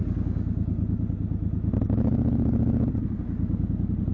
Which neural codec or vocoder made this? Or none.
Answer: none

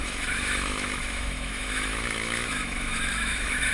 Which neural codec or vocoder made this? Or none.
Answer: autoencoder, DAC-VAE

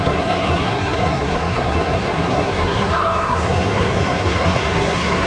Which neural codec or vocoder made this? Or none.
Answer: codec, SNAC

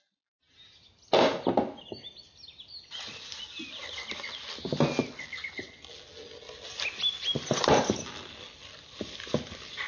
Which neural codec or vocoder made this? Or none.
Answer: none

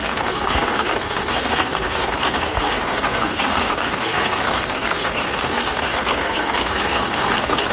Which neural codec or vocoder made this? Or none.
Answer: codec, SNAC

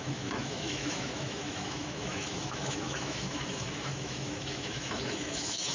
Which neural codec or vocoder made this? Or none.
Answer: autoencoder, DAC-VAE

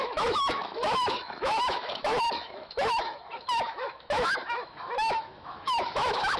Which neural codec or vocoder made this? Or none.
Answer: autoencoder, DAC-VAE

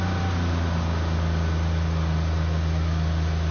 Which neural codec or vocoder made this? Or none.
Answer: none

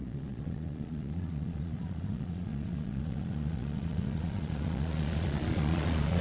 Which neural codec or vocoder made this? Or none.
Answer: vocoder, Vocos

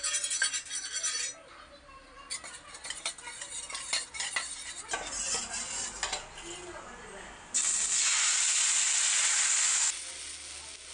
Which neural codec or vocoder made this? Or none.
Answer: none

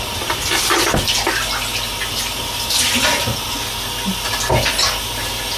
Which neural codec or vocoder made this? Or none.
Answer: none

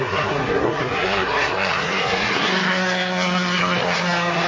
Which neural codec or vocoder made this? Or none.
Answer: codec, SNAC